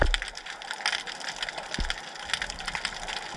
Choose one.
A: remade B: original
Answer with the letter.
B